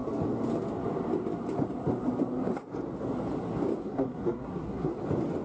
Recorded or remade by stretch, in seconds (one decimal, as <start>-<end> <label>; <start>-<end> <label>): 0.0-3.8 recorded; 3.8-5.0 remade; 5.0-5.4 recorded

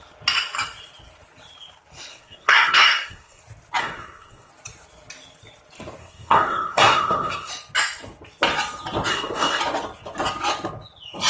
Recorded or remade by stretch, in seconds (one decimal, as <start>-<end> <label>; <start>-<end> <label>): 0.0-2.1 recorded; 2.1-3.4 remade; 3.4-3.8 recorded; 3.8-4.5 remade; 4.5-6.0 recorded; 6.0-7.5 remade; 7.5-9.1 recorded; 9.1-9.6 remade; 9.6-11.3 recorded

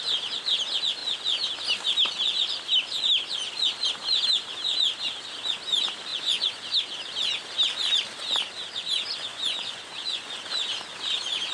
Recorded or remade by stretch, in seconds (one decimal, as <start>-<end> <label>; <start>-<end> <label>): 0.0-6.1 recorded; 6.1-6.8 remade; 6.8-9.3 recorded; 9.3-10.5 remade; 10.5-11.5 recorded

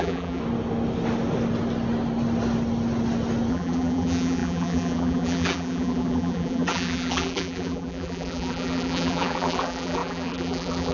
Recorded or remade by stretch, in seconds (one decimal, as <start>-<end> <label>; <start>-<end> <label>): 0.0-0.4 remade; 0.4-3.5 recorded; 3.5-10.9 remade

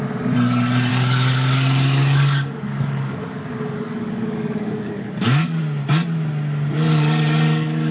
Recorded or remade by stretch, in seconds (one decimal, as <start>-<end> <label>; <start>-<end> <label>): 0.0-0.9 recorded; 0.9-5.6 remade; 5.6-6.9 recorded; 6.9-7.9 remade